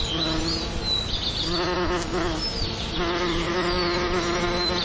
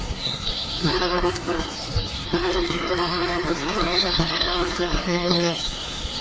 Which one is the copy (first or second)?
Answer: second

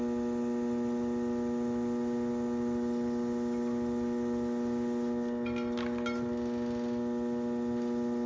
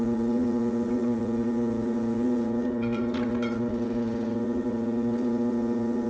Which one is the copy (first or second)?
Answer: second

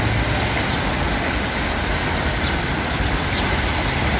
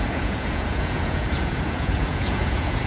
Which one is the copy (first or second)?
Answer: second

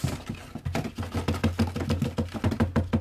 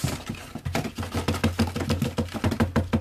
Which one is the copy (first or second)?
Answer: second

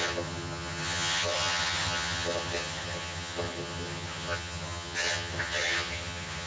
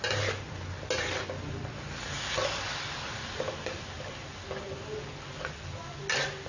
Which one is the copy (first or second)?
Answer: first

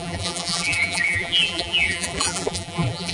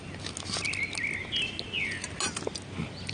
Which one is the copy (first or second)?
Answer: first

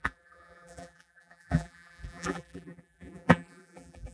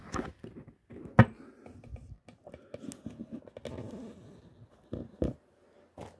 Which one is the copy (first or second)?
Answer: first